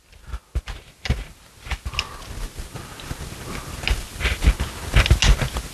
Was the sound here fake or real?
real